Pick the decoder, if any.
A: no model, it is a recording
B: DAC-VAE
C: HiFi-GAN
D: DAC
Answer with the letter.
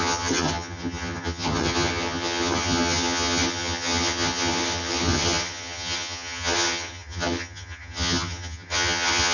C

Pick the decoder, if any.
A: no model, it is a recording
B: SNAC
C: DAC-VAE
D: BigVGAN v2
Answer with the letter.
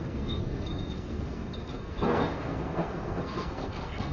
B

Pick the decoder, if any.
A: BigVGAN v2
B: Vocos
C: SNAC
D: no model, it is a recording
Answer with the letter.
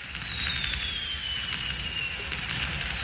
D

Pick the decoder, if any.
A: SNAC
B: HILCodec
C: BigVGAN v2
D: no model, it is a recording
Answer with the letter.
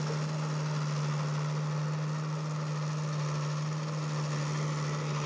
D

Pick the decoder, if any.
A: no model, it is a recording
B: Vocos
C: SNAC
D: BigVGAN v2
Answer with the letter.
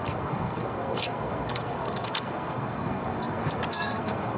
C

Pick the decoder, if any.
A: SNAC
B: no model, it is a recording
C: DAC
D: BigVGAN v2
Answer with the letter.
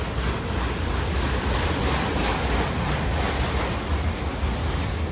B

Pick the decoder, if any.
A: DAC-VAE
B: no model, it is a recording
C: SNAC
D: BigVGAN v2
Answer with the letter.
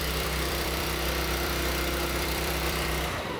D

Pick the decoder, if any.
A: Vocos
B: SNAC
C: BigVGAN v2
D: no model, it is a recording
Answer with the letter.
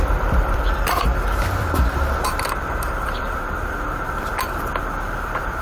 C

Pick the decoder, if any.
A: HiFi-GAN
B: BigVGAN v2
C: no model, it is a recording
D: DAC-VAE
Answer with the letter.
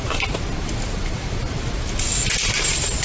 C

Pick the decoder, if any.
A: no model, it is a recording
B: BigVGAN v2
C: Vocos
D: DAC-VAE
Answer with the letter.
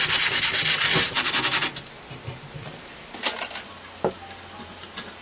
A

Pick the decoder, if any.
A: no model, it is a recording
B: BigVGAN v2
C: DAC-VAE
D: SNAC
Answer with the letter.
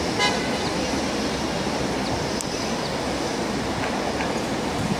A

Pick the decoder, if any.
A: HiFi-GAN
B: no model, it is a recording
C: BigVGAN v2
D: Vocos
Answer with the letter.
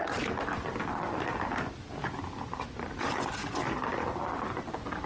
B